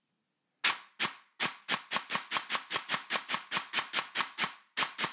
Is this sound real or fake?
real